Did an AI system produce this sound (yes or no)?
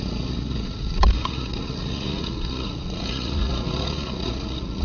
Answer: yes